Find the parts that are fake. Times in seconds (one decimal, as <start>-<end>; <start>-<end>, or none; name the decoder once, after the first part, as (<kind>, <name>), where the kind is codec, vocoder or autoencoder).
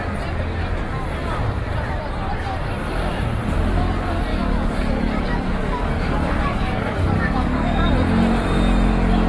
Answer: 4.3-7.9 (codec, DAC)